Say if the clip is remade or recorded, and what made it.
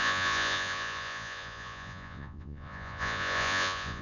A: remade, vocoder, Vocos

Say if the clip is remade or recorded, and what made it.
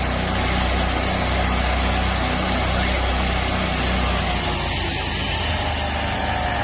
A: recorded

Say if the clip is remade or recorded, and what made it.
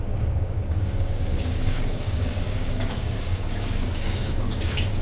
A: remade, codec, DAC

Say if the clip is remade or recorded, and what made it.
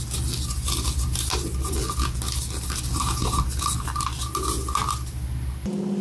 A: recorded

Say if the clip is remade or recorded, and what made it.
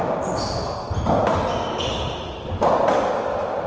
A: recorded